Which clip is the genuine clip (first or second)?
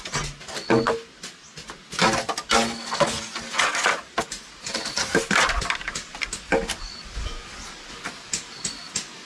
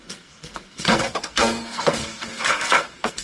first